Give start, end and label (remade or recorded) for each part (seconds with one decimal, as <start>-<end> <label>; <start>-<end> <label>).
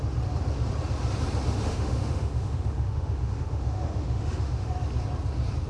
0.0-1.5 recorded; 1.5-4.7 remade; 4.7-5.7 recorded